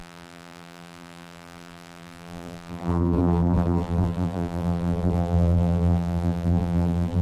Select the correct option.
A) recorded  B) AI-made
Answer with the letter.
B